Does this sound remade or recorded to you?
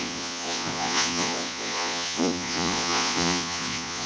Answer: remade